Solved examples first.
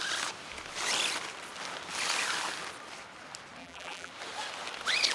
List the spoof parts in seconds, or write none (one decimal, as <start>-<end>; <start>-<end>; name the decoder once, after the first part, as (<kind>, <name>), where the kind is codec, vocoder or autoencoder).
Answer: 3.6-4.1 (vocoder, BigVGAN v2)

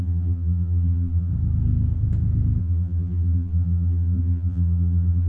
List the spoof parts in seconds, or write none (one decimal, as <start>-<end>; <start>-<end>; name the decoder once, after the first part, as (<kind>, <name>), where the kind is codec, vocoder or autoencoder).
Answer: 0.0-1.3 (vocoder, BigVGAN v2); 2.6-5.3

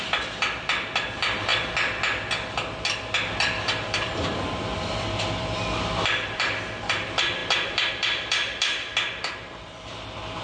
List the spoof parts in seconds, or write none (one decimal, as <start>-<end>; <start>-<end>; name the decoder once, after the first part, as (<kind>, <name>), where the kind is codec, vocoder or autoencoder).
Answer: 0.0-1.5 (vocoder, BigVGAN v2); 3.2-10.4

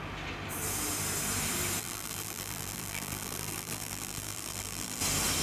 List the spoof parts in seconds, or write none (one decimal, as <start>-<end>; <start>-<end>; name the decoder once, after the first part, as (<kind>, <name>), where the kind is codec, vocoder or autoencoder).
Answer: 1.8-5.0 (vocoder, BigVGAN v2)

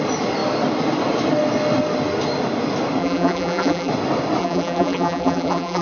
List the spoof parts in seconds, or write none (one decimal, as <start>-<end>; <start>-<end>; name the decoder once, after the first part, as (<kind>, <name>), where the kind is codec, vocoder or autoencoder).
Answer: 3.0-3.9 (vocoder, BigVGAN v2); 4.4-5.8

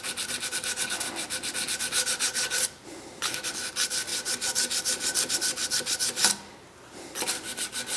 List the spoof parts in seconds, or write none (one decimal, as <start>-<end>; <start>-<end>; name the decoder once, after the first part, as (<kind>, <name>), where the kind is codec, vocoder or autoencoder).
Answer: 4.1-5.3 (vocoder, BigVGAN v2)